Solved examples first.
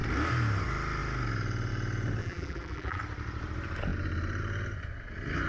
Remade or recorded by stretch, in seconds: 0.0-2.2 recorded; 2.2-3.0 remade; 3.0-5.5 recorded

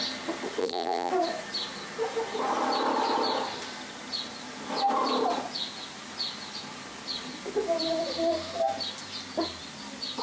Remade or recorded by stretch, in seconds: 0.0-0.6 recorded; 0.6-1.1 remade; 1.1-10.2 recorded